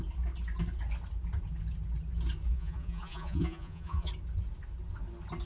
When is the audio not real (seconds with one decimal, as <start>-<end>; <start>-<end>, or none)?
2.5-4.1